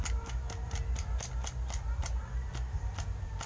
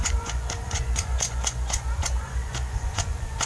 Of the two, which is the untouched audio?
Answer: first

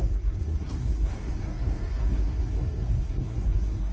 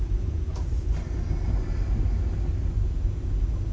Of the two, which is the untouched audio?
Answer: second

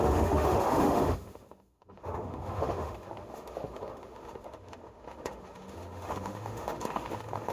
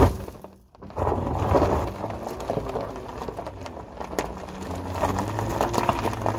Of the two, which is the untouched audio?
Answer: second